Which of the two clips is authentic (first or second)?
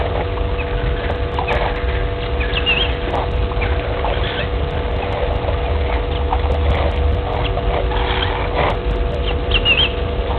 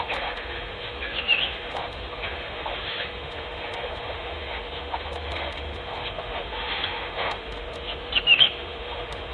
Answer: first